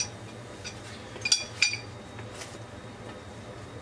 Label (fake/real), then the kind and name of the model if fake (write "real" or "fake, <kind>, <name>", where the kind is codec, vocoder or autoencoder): real